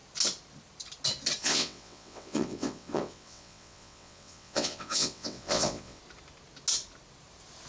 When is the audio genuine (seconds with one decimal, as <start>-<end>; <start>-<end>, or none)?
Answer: 0.0-1.4; 6.0-7.7